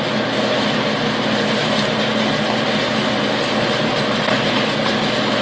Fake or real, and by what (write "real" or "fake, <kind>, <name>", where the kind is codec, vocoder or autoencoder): fake, vocoder, BigVGAN v2